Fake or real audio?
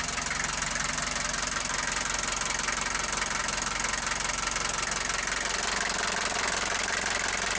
real